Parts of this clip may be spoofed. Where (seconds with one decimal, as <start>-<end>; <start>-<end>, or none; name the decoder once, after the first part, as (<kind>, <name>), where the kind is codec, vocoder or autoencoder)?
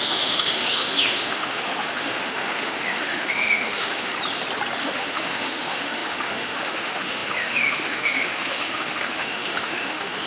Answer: 0.0-4.1 (autoencoder, DAC-VAE); 4.8-10.3